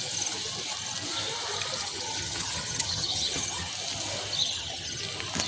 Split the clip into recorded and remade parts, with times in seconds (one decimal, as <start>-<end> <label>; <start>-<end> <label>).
0.0-1.8 recorded; 1.8-3.7 remade; 3.7-4.4 recorded; 4.4-5.0 remade; 5.0-5.5 recorded